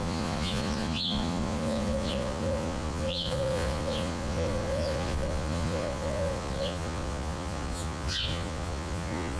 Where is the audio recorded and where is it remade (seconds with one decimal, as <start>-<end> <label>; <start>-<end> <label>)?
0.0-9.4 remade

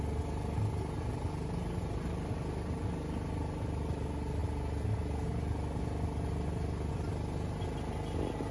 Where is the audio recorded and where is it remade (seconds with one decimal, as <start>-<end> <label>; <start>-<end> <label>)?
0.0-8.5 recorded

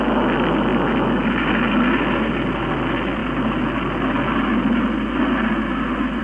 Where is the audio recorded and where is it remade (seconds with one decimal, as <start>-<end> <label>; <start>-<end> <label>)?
0.0-6.2 recorded

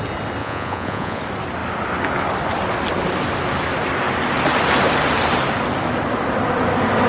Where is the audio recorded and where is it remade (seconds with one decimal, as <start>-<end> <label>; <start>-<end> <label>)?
0.0-0.4 recorded; 0.4-1.2 remade; 1.2-7.1 recorded

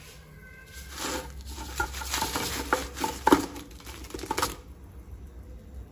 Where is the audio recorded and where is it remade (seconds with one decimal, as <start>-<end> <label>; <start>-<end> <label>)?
0.0-5.9 recorded